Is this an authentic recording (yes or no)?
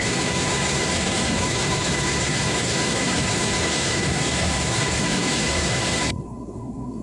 no